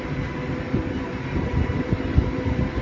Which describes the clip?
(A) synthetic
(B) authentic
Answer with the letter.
B